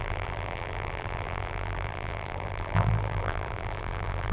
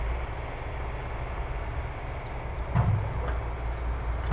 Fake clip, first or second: first